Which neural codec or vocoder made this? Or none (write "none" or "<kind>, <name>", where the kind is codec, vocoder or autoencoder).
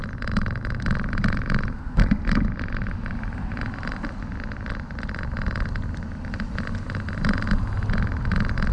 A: none